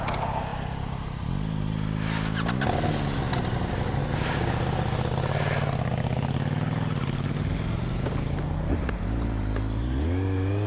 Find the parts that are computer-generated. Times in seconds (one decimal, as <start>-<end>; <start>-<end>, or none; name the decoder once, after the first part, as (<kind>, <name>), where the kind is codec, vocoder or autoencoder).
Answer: none